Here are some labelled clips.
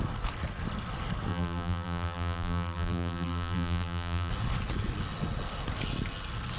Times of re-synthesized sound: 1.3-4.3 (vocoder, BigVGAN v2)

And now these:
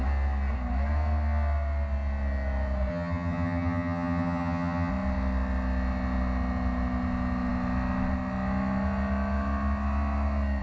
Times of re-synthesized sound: 2.9-4.9 (vocoder, HiFi-GAN)